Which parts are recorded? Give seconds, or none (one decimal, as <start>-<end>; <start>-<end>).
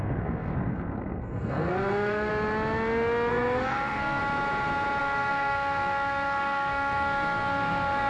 2.3-3.3; 4.2-5.0